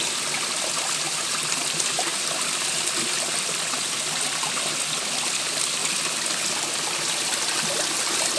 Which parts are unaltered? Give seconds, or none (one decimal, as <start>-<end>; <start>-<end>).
0.0-8.4